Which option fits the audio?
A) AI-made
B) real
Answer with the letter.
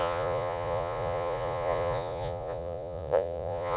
A